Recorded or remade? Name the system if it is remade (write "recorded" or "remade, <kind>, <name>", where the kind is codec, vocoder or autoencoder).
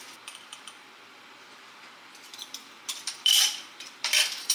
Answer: remade, vocoder, BigVGAN v2